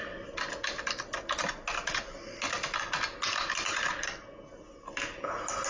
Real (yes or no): yes